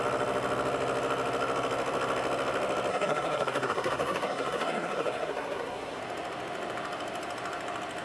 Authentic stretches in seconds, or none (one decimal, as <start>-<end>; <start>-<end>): 0.0-2.9; 6.0-8.0

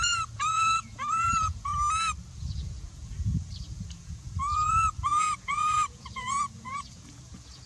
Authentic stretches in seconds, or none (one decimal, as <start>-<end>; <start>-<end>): 1.7-2.3

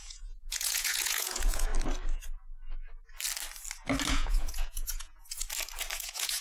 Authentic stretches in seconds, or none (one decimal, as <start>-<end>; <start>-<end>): 1.7-4.1; 5.2-6.0

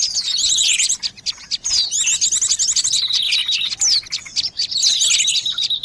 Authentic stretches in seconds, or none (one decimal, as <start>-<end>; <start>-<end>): 0.0-0.4; 1.0-5.8

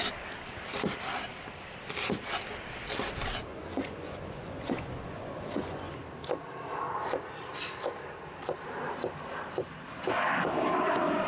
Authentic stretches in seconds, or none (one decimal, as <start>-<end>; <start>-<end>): 0.0-3.5; 5.9-11.3